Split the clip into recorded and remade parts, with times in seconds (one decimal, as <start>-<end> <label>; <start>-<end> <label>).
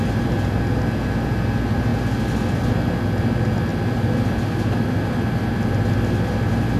0.0-6.8 recorded